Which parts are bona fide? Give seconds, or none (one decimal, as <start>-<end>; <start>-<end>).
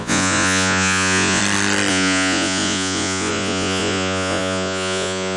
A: 1.4-1.9